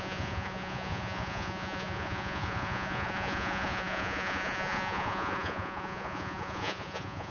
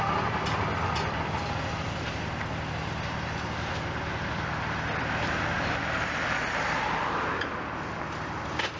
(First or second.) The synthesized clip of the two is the first